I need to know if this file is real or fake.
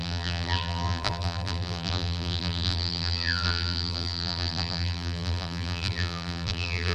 fake